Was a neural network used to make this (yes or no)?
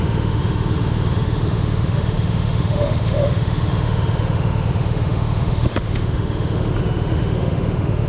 yes